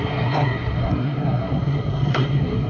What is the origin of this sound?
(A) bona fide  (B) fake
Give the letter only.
B